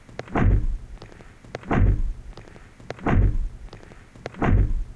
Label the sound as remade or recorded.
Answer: recorded